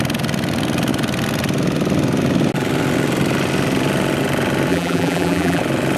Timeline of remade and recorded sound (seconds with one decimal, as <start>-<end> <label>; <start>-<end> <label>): 0.0-4.7 recorded; 4.7-5.6 remade; 5.6-6.0 recorded